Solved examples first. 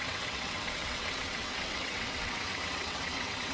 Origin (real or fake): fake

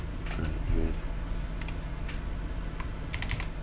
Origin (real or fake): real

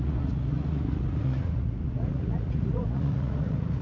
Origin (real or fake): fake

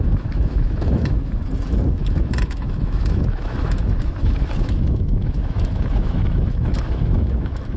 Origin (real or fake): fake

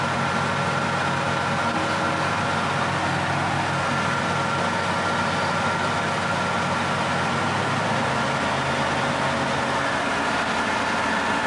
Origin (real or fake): real